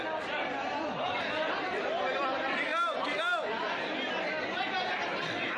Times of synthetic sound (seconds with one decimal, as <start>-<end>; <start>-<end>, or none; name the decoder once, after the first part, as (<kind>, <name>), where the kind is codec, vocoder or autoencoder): none